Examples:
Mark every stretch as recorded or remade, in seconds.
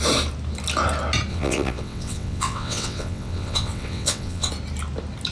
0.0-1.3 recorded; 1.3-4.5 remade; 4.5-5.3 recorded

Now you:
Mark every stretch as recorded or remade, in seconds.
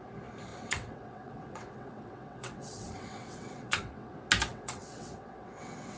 0.0-0.5 recorded; 0.5-4.1 remade; 4.1-4.5 recorded; 4.5-6.0 remade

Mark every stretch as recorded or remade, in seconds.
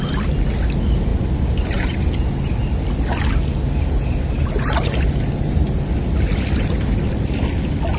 0.0-8.0 recorded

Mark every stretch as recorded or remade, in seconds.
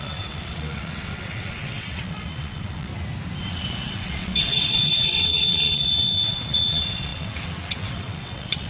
0.0-2.9 remade; 2.9-3.4 recorded; 3.4-8.7 remade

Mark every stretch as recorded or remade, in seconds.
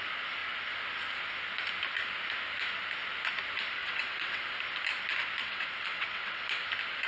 0.0-3.8 recorded; 3.8-4.4 remade; 4.4-5.4 recorded; 5.4-6.6 remade; 6.6-7.1 recorded